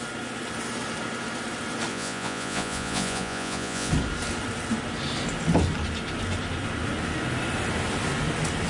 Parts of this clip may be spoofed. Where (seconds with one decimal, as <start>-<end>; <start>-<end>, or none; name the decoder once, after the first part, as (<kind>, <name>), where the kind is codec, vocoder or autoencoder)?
1.9-3.9 (vocoder, Vocos)